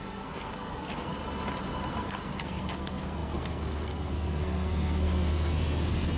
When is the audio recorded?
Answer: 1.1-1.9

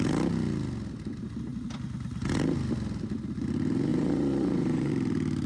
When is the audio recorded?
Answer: 0.0-3.9; 4.9-5.5

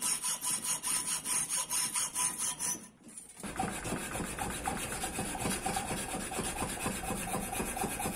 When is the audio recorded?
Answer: 0.0-7.3

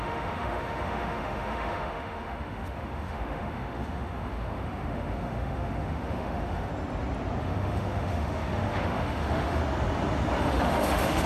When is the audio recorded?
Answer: 6.7-7.4; 9.6-10.4

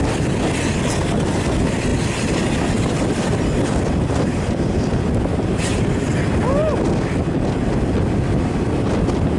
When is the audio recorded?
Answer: 0.0-5.3; 6.1-9.4

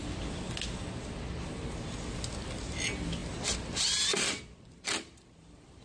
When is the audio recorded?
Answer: 0.0-5.8

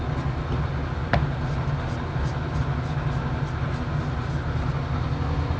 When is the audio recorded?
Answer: 0.0-5.6

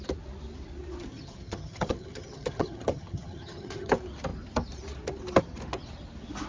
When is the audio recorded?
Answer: 0.0-1.1; 3.9-6.5